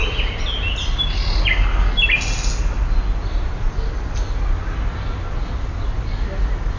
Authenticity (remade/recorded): recorded